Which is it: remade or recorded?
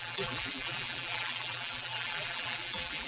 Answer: remade